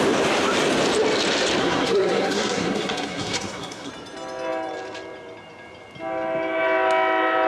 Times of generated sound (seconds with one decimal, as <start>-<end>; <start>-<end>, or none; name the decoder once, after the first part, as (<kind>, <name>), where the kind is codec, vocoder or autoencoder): 1.6-3.9 (codec, SNAC)